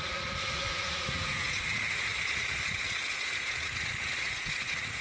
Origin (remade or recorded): remade